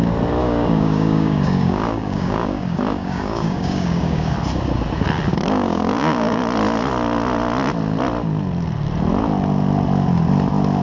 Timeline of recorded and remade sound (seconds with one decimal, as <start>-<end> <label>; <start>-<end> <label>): 0.0-0.4 recorded; 0.4-4.3 remade; 4.3-5.3 recorded; 5.3-6.4 remade; 6.4-10.8 recorded

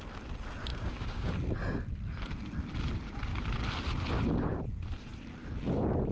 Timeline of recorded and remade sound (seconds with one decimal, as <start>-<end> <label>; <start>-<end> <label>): 0.0-0.7 recorded; 0.7-1.3 remade; 1.3-6.1 recorded

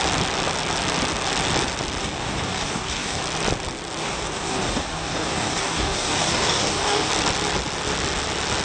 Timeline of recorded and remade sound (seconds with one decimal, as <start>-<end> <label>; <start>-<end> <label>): 0.0-2.0 recorded; 2.0-3.2 remade; 3.2-4.0 recorded; 4.0-7.1 remade; 7.1-8.6 recorded

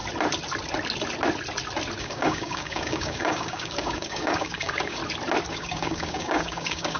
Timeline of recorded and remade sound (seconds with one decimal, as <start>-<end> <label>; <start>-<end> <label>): 0.0-2.0 recorded; 2.0-5.0 remade; 5.0-5.5 recorded; 5.5-7.0 remade